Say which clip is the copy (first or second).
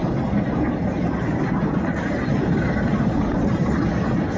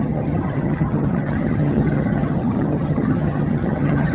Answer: second